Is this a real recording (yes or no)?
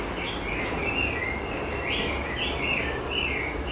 yes